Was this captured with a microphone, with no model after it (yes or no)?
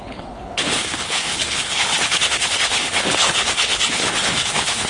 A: no